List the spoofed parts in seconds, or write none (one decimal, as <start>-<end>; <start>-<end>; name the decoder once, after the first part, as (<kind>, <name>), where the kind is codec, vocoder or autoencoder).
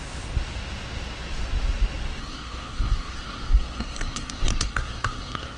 2.2-5.6 (codec, SNAC)